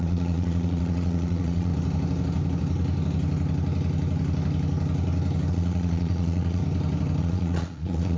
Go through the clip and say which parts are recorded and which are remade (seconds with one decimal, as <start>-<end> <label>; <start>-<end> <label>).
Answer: 0.0-1.7 remade; 1.7-5.5 recorded; 5.5-6.6 remade; 6.6-7.2 recorded; 7.2-8.2 remade